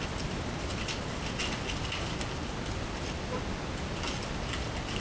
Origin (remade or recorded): recorded